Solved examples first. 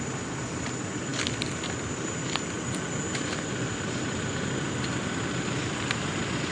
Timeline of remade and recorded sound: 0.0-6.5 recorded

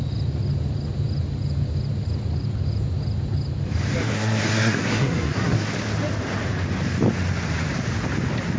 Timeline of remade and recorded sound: 0.0-4.1 recorded; 4.1-5.7 remade; 5.7-8.6 recorded

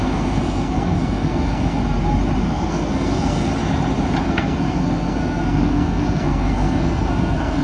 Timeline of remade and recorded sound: 0.0-1.8 remade; 1.8-2.4 recorded; 2.4-3.5 remade; 3.5-4.2 recorded; 4.2-7.6 remade

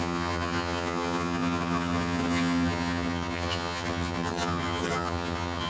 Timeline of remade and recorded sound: 0.0-5.7 remade